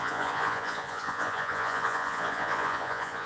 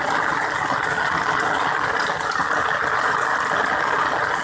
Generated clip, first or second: first